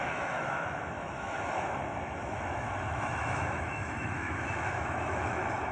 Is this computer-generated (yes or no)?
yes